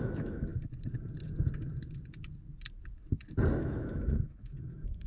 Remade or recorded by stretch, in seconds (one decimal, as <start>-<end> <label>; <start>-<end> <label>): 0.0-0.5 remade; 0.5-3.6 recorded; 3.6-5.1 remade